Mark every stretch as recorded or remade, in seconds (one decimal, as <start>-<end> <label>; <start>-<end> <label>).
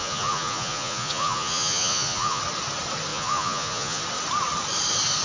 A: 0.0-2.4 remade; 2.4-3.1 recorded; 3.1-4.0 remade; 4.0-5.2 recorded